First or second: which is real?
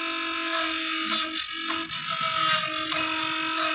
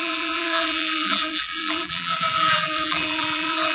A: first